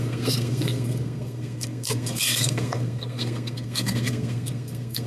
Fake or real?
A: fake